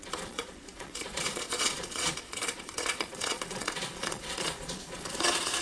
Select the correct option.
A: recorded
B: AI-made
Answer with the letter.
B